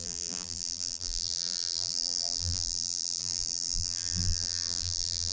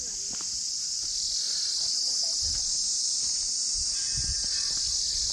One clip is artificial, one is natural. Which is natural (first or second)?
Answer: second